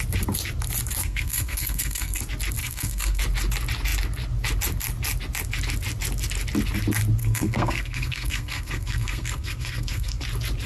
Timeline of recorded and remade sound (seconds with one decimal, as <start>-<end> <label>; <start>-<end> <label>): 0.0-1.0 recorded; 1.0-2.2 remade; 2.2-2.6 recorded; 2.6-3.2 remade; 3.2-7.2 recorded; 7.2-10.2 remade; 10.2-10.7 recorded